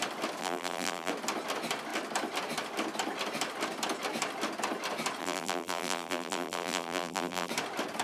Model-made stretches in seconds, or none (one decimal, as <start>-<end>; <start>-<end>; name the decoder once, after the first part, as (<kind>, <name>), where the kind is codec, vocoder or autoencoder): 0.4-1.1 (vocoder, BigVGAN v2); 5.2-7.5